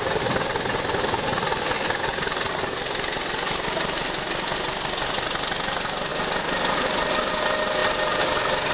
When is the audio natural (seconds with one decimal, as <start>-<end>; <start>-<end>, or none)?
0.0-8.7